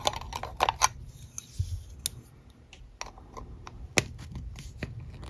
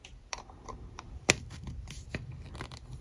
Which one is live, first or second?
first